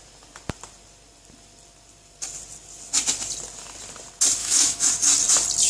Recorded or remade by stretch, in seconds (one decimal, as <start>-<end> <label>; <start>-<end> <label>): 0.0-4.4 recorded; 4.4-4.9 remade; 4.9-5.7 recorded